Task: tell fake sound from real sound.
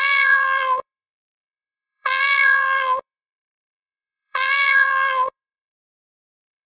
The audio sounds fake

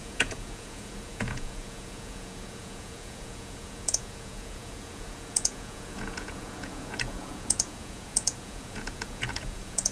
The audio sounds fake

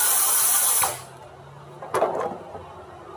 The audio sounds real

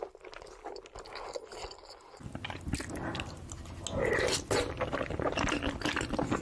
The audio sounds real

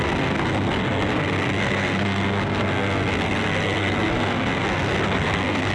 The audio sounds fake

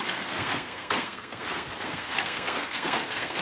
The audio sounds fake